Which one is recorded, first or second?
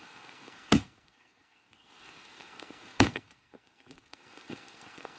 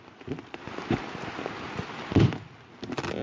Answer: second